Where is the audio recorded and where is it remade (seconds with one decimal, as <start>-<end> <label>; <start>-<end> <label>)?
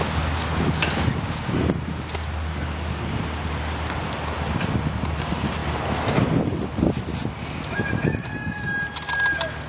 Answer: 0.0-9.7 recorded